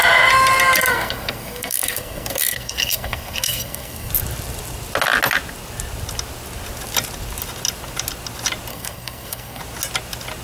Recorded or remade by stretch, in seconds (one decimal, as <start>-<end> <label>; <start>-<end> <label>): 0.0-0.9 recorded; 0.9-4.1 remade; 4.1-8.7 recorded; 8.7-9.6 remade; 9.6-10.4 recorded